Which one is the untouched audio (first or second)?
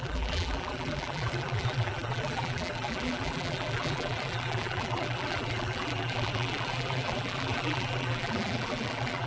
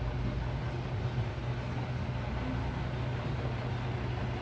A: second